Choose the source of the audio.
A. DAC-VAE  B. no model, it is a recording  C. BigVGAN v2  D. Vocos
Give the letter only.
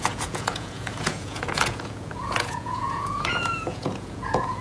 D